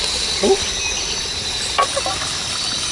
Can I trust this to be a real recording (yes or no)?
yes